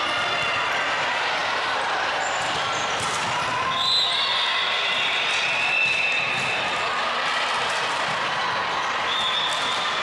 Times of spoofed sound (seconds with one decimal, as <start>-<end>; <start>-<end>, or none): 1.4-3.1